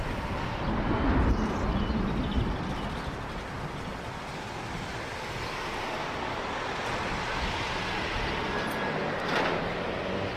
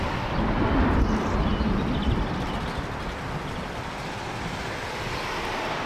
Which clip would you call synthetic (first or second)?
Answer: second